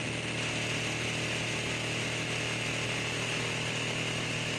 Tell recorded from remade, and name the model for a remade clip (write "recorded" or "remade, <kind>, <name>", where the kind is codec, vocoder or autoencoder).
recorded